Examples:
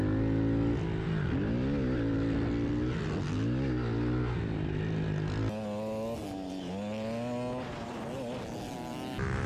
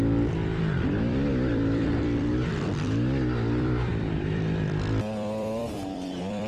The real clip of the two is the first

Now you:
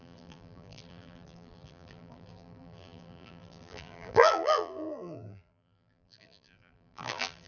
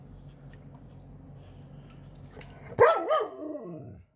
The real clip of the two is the second